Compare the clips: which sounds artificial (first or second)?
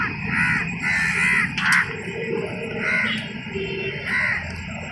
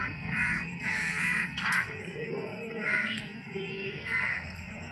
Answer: second